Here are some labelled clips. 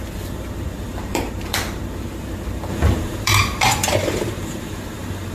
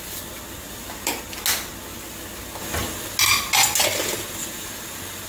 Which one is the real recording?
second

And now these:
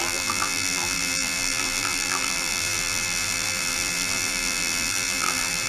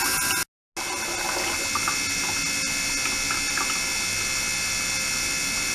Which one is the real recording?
second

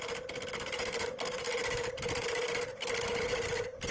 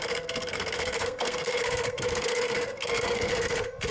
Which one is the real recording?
first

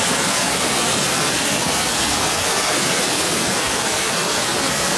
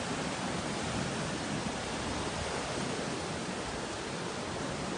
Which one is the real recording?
second